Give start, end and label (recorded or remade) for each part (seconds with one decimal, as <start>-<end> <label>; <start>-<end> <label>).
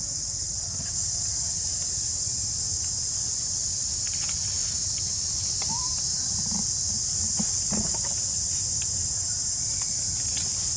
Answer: 0.0-10.8 recorded